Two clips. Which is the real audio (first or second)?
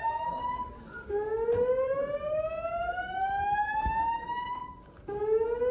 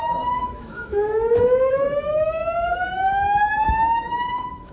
first